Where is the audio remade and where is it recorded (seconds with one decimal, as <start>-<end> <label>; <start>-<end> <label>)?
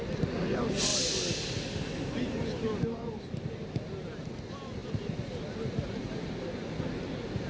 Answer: 0.0-7.5 recorded